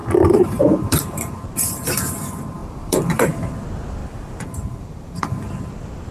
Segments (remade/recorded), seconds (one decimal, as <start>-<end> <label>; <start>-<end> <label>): 0.0-1.4 remade; 1.4-2.6 recorded; 2.6-3.5 remade; 3.5-4.0 recorded; 4.0-5.5 remade; 5.5-6.1 recorded